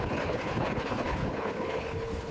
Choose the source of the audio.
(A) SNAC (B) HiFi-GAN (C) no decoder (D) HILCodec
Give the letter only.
D